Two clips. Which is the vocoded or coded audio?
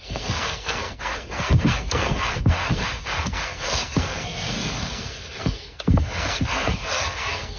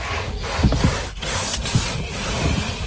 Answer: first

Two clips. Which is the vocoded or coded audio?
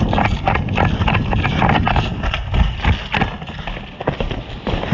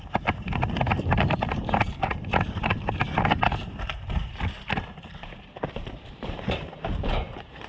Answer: second